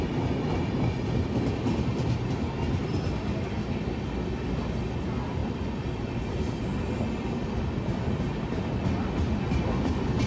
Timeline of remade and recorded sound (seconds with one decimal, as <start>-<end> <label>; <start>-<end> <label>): 0.0-5.4 recorded; 5.4-6.5 remade; 6.5-10.3 recorded